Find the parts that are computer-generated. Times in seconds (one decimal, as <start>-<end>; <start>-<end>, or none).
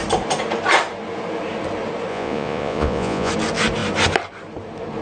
2.1-3.3